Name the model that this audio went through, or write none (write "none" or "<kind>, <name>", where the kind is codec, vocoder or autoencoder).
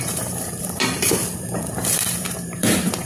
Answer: vocoder, BigVGAN v2